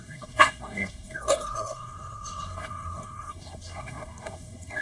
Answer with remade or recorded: remade